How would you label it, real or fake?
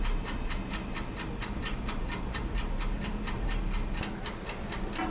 real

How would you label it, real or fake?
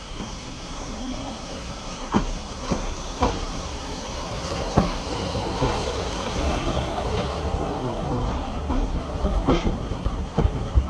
fake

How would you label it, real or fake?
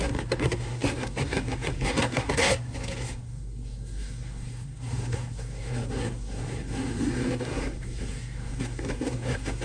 fake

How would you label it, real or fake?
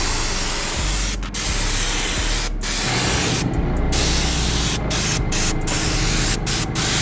real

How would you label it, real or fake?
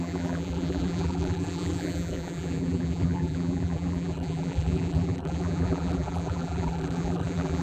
fake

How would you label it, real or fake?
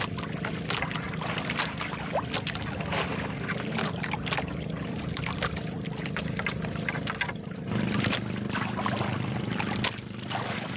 real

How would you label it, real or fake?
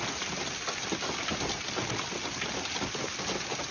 real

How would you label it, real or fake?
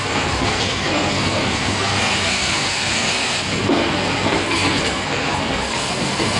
fake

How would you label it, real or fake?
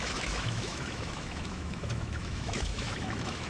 fake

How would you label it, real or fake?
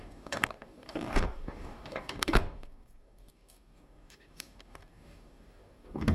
fake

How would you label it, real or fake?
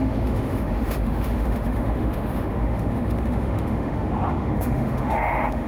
fake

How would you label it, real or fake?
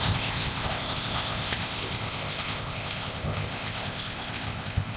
fake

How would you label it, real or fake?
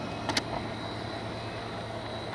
real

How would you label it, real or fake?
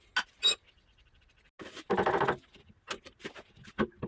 real